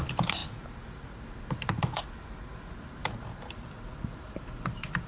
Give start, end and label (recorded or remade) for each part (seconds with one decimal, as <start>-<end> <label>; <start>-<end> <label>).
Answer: 0.0-5.1 recorded